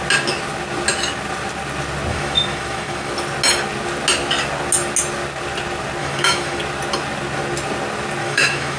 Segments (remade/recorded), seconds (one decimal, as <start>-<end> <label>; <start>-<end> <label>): 0.0-2.1 recorded; 2.1-3.1 remade; 3.1-6.0 recorded; 6.0-6.6 remade; 6.6-8.2 recorded; 8.2-8.8 remade